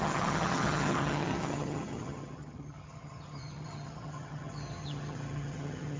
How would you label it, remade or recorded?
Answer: remade